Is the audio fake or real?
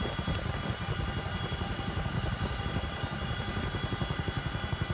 real